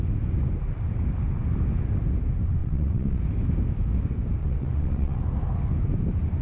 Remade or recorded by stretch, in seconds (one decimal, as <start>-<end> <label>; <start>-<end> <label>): 0.0-2.6 recorded; 2.6-3.2 remade; 3.2-4.4 recorded; 4.4-5.2 remade; 5.2-6.4 recorded